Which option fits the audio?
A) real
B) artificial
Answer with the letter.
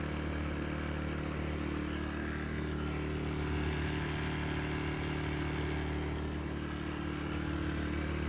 A